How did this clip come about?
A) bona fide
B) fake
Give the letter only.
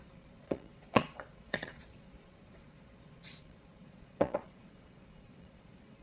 B